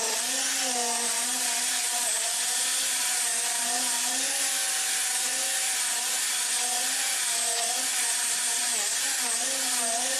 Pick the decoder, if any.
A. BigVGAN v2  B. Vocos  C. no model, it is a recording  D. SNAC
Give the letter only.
C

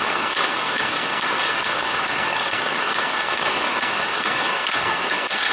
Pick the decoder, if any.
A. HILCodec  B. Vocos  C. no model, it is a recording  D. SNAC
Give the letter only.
D